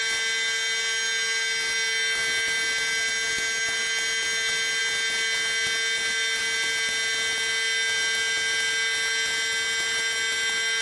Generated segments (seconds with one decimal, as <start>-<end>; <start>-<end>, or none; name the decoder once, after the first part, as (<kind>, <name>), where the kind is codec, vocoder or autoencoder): none